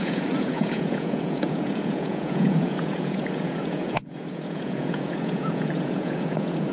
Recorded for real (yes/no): no